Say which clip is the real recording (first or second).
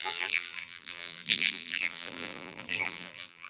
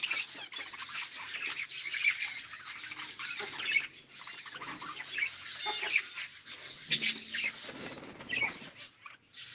second